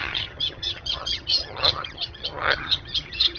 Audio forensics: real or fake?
fake